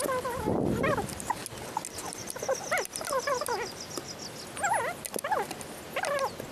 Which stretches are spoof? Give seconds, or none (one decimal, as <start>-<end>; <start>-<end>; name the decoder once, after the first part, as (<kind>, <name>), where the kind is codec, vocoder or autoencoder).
none